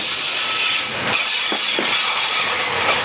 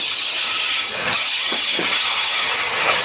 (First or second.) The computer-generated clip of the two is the second